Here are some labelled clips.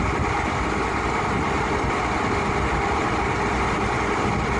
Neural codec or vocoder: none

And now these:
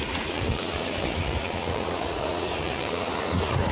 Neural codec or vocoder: vocoder, Vocos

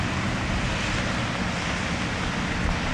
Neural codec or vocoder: none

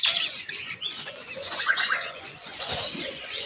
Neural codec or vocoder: vocoder, Vocos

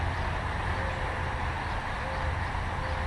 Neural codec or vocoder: none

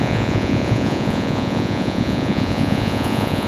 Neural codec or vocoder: vocoder, Vocos